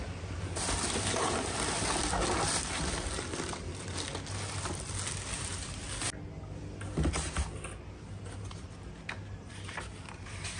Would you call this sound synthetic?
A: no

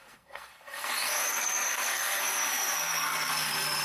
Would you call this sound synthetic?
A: yes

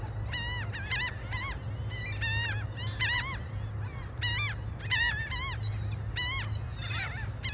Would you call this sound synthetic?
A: no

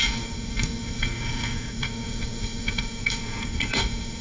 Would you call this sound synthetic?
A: yes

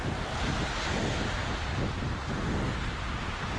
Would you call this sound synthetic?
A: no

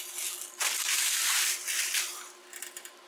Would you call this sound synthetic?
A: no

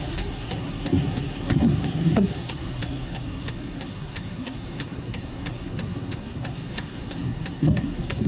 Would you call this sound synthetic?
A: yes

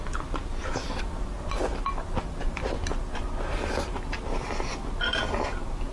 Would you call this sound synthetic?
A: no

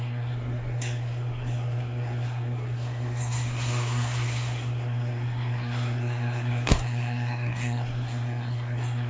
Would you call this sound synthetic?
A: yes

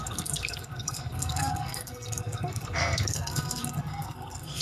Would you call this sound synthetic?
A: yes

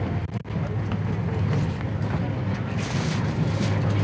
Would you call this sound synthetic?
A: no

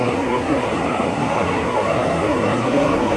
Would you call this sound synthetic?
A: yes